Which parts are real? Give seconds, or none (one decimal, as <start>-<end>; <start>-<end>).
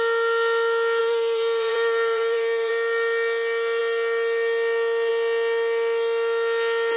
0.0-1.0; 2.7-7.0